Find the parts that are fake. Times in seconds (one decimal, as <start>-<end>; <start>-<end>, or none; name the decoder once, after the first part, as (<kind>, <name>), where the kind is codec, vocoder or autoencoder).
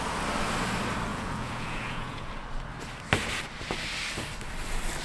1.1-2.3 (vocoder, Vocos)